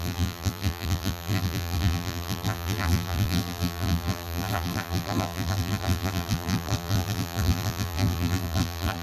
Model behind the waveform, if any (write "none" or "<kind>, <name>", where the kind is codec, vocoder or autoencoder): vocoder, BigVGAN v2